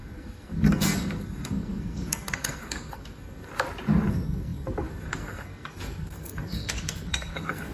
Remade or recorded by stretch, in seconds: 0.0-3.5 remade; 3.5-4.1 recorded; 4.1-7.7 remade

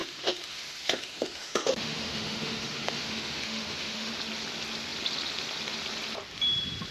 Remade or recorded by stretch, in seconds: 0.0-4.1 remade; 4.1-6.9 recorded

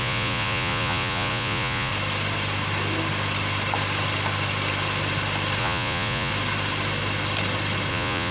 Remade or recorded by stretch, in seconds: 0.0-1.9 remade; 1.9-5.6 recorded; 5.6-6.3 remade; 6.3-7.9 recorded; 7.9-8.3 remade

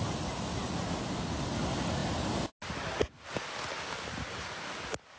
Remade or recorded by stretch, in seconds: 0.0-5.2 recorded